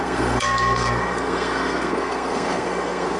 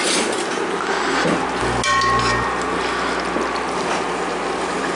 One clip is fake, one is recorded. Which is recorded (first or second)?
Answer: second